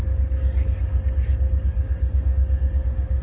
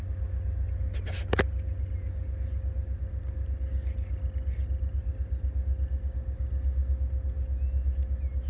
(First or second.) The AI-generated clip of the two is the first